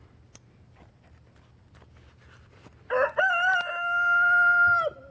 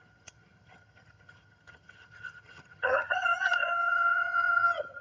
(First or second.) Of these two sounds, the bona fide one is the first